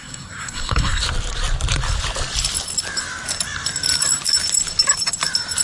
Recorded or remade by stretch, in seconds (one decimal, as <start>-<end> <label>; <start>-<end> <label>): 0.0-1.0 remade; 1.0-5.6 recorded